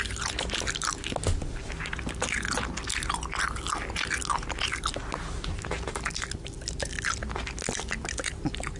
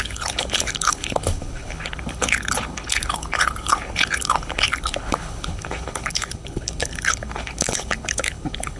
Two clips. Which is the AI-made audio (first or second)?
second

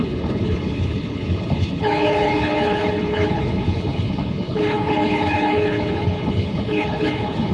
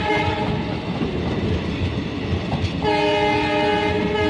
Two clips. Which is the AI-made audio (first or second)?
first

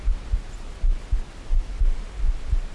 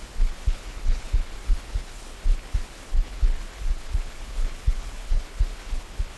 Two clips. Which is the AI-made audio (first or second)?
second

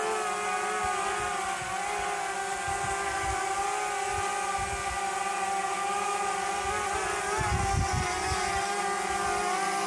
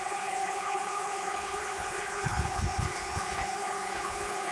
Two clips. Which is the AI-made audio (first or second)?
second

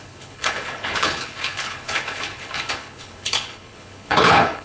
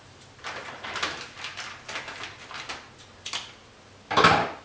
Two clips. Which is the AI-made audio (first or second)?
first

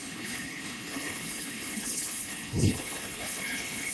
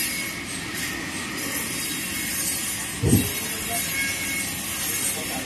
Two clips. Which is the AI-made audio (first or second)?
first